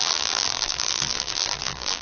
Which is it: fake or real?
fake